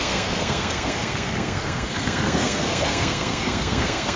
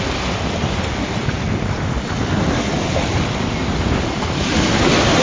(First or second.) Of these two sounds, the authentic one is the second